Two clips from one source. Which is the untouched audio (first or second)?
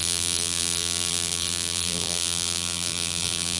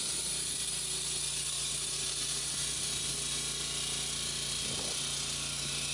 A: second